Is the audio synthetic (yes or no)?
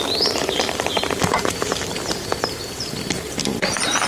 yes